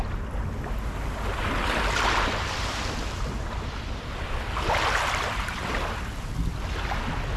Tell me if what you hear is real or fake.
real